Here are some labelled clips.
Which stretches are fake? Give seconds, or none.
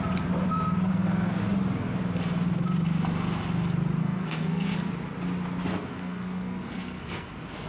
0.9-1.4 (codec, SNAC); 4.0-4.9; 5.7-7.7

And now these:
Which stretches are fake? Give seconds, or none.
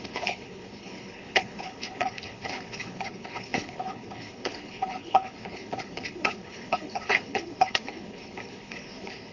0.0-9.3 (codec, HILCodec)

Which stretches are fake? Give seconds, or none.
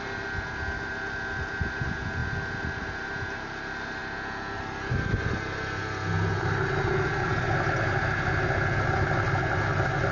none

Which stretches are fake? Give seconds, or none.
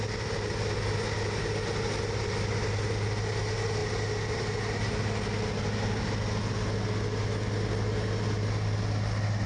none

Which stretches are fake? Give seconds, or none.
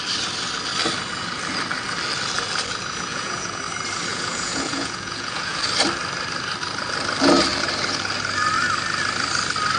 3.1-3.6 (vocoder, Vocos); 4.1-5.6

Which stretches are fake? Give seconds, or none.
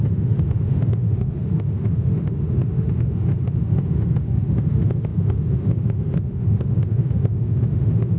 0.0-8.2 (autoencoder, DAC-VAE)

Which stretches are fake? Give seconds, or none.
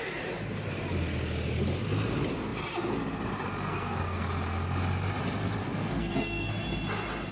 3.7-4.3 (codec, SNAC); 5.6-6.5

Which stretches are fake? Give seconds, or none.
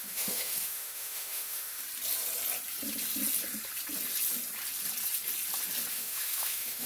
0.0-1.8 (autoencoder, DAC-VAE); 5.9-6.9